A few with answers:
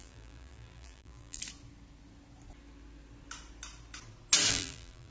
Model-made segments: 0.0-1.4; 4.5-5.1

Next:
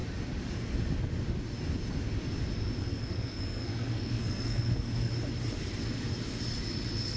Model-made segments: 2.8-5.1

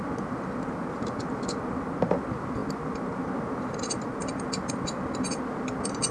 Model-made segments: none

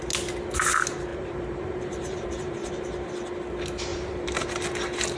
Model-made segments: 1.1-3.1; 3.9-4.4

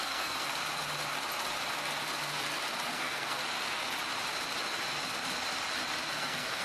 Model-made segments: 0.0-0.5; 2.9-3.4; 6.1-6.6